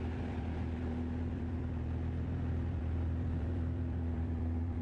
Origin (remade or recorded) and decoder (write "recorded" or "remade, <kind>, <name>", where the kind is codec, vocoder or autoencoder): remade, vocoder, BigVGAN v2